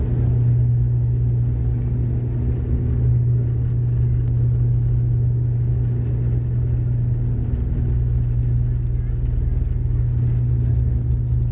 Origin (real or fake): real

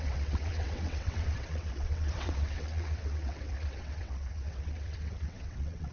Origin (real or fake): fake